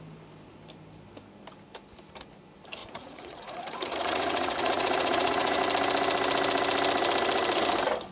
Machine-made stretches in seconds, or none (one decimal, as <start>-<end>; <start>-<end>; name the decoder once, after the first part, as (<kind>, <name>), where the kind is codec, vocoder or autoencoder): 2.8-5.6 (vocoder, Vocos)